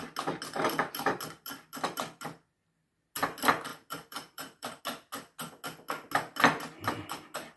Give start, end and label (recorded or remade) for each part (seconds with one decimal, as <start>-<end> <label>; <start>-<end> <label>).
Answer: 0.0-3.7 recorded; 3.7-4.8 remade; 4.8-7.6 recorded